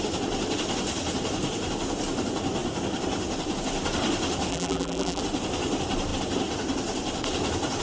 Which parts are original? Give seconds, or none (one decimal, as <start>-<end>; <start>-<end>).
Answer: 0.0-4.5; 5.2-7.8